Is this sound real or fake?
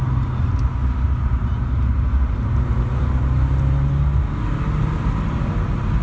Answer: real